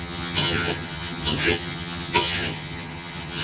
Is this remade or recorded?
remade